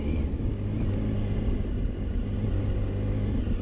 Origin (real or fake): real